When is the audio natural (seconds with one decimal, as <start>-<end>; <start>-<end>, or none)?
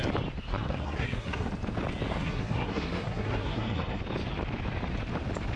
0.0-0.5; 1.5-2.1; 4.0-5.6